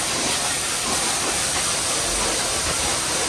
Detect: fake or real fake